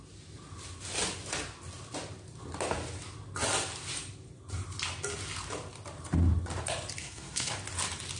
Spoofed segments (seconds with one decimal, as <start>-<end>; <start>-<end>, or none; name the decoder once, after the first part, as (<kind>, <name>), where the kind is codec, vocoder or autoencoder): 7.0-7.5 (codec, SNAC)